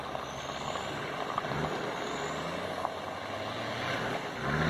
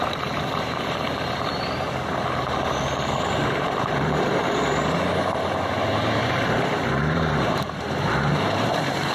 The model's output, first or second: second